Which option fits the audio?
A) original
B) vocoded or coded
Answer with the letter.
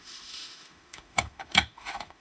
B